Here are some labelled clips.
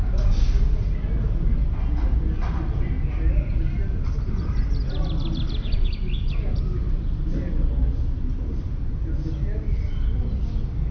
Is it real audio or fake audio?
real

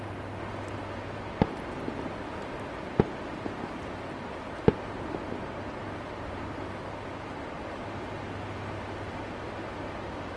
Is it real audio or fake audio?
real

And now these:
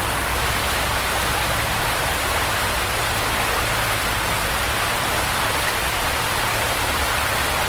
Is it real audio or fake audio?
real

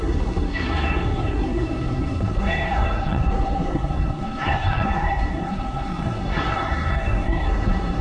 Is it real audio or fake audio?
fake